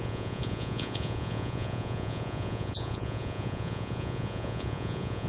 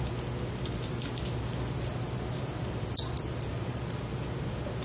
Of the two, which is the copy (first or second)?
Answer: first